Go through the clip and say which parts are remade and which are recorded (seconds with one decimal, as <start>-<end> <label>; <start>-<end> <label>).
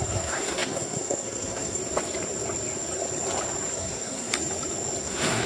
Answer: 0.0-1.8 remade; 1.8-3.7 recorded; 3.7-4.3 remade; 4.3-5.0 recorded; 5.0-5.5 remade